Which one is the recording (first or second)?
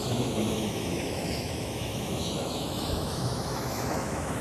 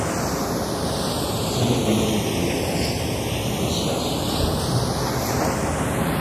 second